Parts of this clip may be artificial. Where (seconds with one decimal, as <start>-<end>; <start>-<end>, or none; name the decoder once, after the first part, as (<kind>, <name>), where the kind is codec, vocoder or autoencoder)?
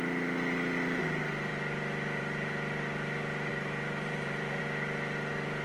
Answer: 3.5-4.6 (vocoder, BigVGAN v2)